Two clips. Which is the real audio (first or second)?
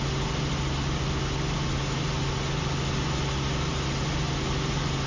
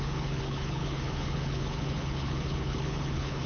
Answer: first